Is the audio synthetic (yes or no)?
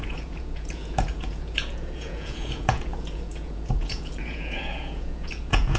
yes